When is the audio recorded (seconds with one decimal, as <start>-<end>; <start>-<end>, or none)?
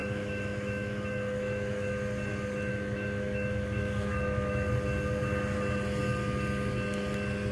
1.9-2.7; 4.7-7.5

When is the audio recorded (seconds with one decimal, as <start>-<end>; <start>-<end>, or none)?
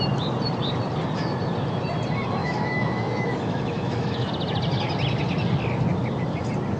0.0-2.4; 4.3-6.8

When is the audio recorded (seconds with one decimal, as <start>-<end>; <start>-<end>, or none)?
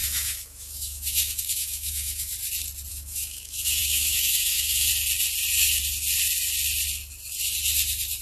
2.3-2.9; 4.9-8.2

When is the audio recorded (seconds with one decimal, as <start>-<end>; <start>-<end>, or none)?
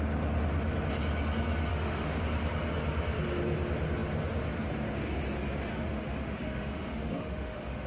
0.0-1.7; 2.2-5.7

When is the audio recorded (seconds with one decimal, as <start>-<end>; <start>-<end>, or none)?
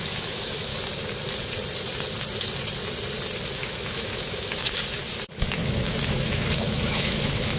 0.7-3.5; 4.8-5.4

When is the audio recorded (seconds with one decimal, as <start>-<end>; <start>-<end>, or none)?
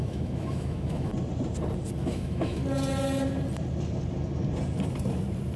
1.1-2.0; 2.6-5.6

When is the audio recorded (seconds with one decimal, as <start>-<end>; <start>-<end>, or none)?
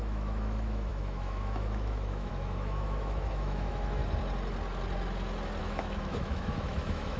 4.0-5.6